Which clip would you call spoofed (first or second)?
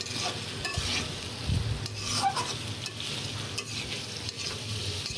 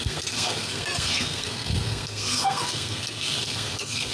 second